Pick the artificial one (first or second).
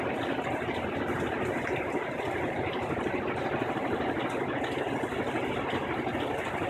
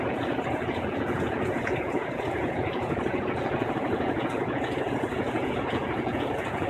second